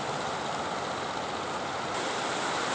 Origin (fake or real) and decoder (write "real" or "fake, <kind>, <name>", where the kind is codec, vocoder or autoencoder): real